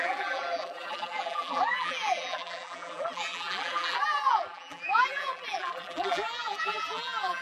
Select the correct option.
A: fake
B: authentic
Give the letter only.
A